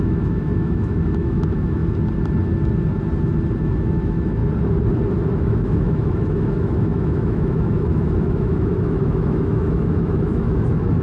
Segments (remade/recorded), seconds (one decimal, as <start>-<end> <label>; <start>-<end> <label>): 0.0-1.8 remade; 1.8-3.6 recorded; 3.6-4.4 remade; 4.4-5.4 recorded; 5.4-11.0 remade